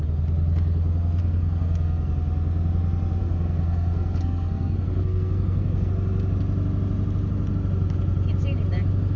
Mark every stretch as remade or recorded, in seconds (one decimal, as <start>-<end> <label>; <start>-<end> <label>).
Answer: 0.0-1.2 recorded; 1.2-2.1 remade; 2.1-3.2 recorded; 3.2-5.9 remade; 5.9-9.2 recorded